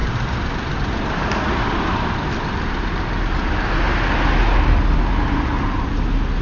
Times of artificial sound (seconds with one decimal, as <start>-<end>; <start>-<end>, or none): 0.0-2.1